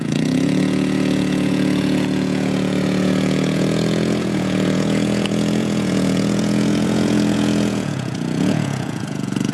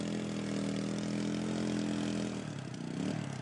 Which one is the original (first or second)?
second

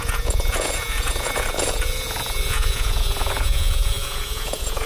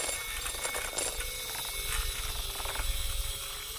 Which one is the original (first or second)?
second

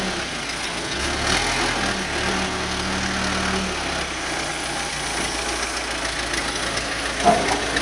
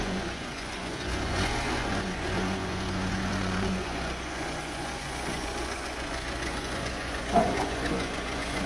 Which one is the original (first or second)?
first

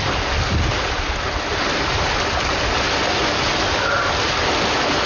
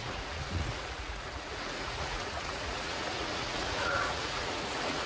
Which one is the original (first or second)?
first